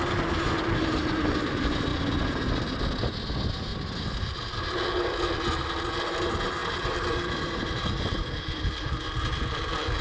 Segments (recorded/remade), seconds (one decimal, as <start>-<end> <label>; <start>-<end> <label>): 0.0-1.9 recorded; 1.9-2.8 remade; 2.8-3.7 recorded; 3.7-4.7 remade; 4.7-6.6 recorded; 6.6-9.0 remade; 9.0-10.0 recorded